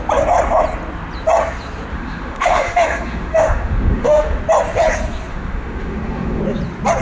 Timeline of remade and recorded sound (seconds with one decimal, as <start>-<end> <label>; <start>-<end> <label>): 0.0-1.9 recorded; 1.9-4.4 remade; 4.4-5.3 recorded; 5.3-6.4 remade; 6.4-7.0 recorded

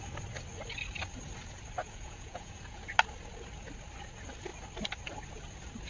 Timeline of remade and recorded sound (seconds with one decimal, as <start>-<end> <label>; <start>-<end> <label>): 0.0-1.8 recorded; 1.8-2.8 remade; 2.8-5.9 recorded

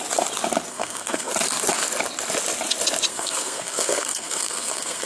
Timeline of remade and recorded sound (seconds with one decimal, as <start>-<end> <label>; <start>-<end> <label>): 0.0-0.7 recorded; 0.7-1.3 remade; 1.3-3.1 recorded; 3.1-5.1 remade

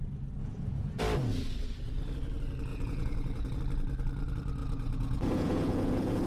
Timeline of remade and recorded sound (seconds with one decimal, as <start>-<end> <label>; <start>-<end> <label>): 0.0-0.4 recorded; 0.4-1.0 remade; 1.0-2.7 recorded; 2.7-3.6 remade; 3.6-4.6 recorded; 4.6-6.3 remade

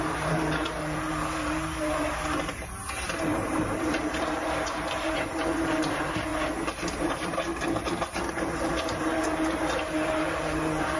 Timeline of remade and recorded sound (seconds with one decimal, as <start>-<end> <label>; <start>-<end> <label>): 0.0-6.3 remade; 6.3-7.0 recorded; 7.0-7.5 remade; 7.5-8.3 recorded; 8.3-11.0 remade

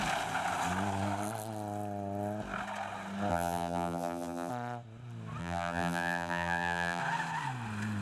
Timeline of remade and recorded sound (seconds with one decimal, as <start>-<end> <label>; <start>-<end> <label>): 0.0-3.3 recorded; 3.3-4.5 remade; 4.5-5.4 recorded; 5.4-7.0 remade; 7.0-8.0 recorded

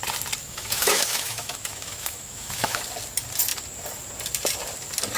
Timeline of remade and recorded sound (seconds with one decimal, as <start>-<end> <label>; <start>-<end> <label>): 0.0-0.4 recorded; 0.4-2.8 remade; 2.8-5.2 recorded

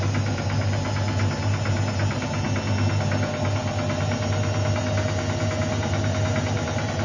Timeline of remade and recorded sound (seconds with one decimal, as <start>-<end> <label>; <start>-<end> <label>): 0.0-7.0 recorded